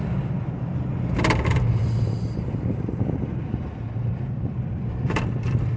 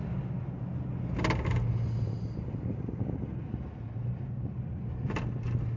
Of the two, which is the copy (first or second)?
first